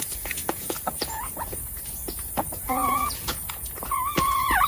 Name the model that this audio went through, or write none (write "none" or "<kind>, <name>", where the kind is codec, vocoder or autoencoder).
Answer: vocoder, Vocos